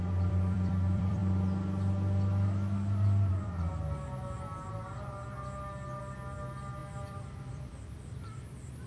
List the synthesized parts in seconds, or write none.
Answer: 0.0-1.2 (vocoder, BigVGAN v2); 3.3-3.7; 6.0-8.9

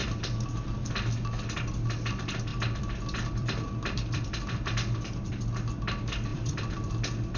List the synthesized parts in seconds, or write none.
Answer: 0.0-0.8 (vocoder, BigVGAN v2); 2.5-5.4; 6.3-6.9

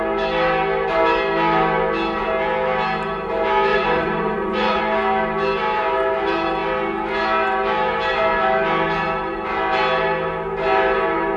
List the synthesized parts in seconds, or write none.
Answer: 3.7-4.8 (vocoder, Vocos)

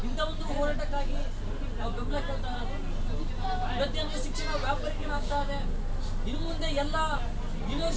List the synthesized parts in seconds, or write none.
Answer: 5.0-5.8 (codec, DAC)

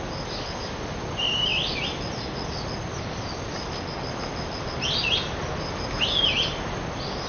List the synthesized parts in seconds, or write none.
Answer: none

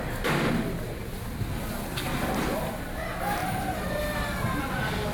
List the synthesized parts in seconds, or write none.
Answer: none

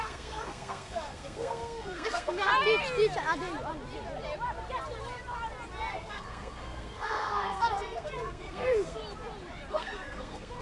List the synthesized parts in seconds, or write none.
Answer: 0.0-2.5 (codec, SNAC); 5.9-9.0; 9.7-10.6